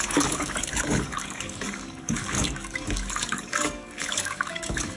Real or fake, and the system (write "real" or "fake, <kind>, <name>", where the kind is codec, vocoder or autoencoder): fake, codec, DAC